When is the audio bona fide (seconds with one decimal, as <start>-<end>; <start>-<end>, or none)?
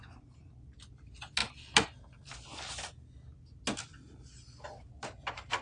0.0-5.6